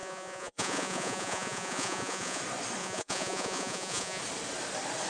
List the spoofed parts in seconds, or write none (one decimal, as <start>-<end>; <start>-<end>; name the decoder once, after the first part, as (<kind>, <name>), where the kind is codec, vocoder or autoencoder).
0.0-2.4 (vocoder, Vocos); 2.8-4.2